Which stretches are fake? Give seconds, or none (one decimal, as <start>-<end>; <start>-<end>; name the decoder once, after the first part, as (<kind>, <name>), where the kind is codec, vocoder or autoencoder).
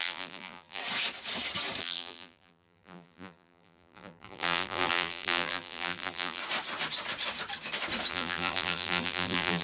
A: 0.0-0.8 (vocoder, BigVGAN v2); 1.8-6.4; 8.1-9.6